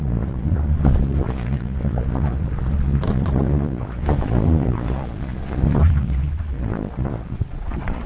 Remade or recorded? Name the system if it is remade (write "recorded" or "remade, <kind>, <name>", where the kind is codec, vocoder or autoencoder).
remade, vocoder, Vocos